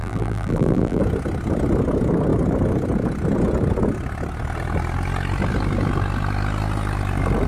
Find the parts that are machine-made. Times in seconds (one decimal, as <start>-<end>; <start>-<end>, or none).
0.0-1.0